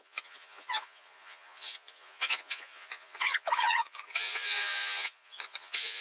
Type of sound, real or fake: fake